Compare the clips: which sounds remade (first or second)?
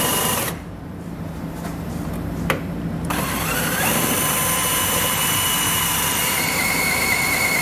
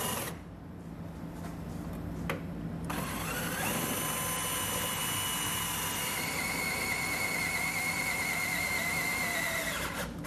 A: first